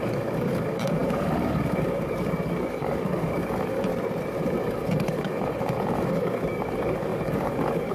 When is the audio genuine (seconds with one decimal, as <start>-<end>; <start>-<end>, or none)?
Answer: 3.9-4.4